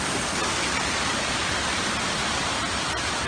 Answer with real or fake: real